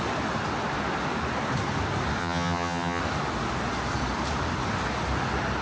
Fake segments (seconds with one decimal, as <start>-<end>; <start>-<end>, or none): 2.2-3.0